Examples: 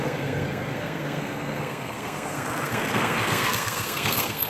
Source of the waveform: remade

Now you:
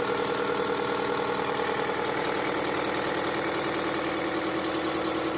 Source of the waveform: recorded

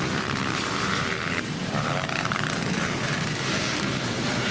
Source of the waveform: remade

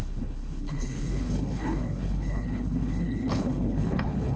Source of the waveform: remade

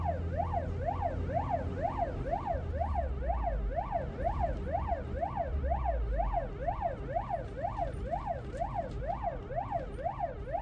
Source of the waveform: recorded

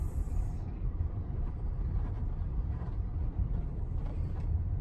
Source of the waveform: remade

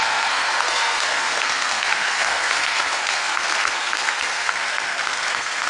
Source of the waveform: remade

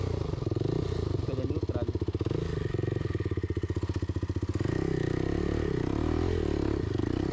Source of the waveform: recorded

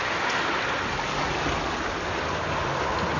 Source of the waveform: recorded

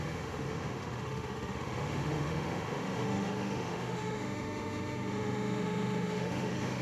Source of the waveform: remade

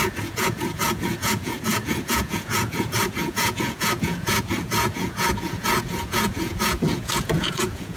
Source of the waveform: remade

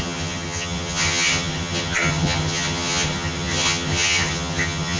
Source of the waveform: remade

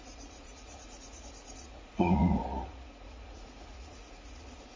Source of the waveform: remade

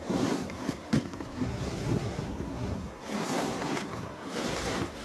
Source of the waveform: remade